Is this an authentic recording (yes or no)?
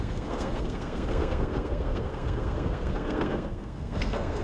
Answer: no